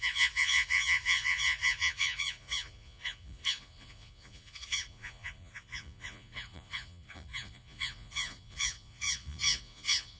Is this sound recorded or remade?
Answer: remade